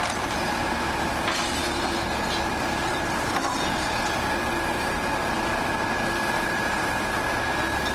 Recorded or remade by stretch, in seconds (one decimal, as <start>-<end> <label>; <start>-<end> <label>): 0.0-2.9 recorded; 2.9-3.5 remade; 3.5-7.9 recorded